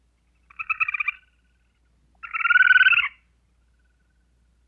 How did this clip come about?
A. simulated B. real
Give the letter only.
B